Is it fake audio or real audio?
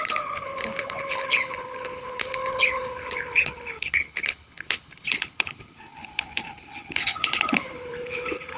fake